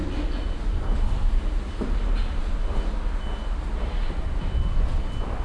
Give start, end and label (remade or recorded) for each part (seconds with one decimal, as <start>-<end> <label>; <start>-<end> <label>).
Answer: 0.0-5.4 recorded

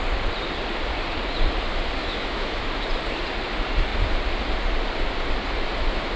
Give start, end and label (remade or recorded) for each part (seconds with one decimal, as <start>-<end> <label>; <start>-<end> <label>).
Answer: 0.0-2.0 recorded; 2.0-2.7 remade; 2.7-6.2 recorded

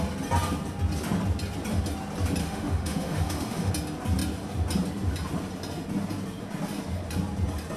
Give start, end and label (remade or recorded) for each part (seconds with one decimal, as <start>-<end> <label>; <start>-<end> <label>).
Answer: 0.0-2.4 recorded; 2.4-3.7 remade; 3.7-7.8 recorded

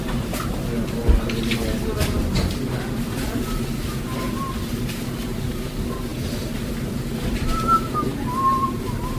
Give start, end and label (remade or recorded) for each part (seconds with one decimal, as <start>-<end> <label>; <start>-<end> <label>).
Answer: 0.0-9.2 recorded

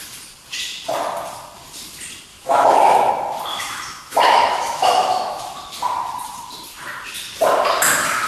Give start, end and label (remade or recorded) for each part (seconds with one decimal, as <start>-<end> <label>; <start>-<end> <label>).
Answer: 0.0-2.3 recorded; 2.3-3.1 remade; 3.1-3.5 recorded; 3.5-5.6 remade; 5.6-8.3 recorded

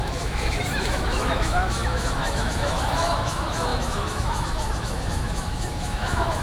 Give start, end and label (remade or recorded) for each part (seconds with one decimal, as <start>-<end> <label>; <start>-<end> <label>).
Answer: 0.0-6.4 remade